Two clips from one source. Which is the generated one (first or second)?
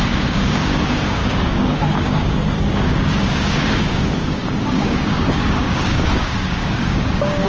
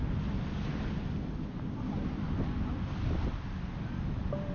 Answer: first